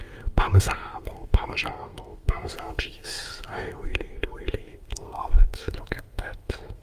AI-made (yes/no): yes